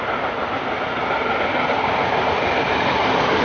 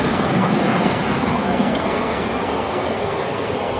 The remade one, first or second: second